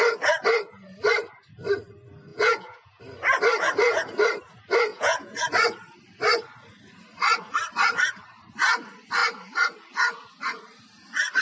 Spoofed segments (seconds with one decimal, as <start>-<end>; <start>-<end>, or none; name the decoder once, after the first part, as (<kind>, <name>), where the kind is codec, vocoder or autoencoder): 2.3-3.0 (vocoder, Vocos); 4.9-5.4